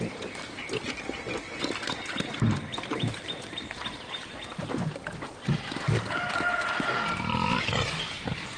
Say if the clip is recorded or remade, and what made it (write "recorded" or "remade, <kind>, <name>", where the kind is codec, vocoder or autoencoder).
recorded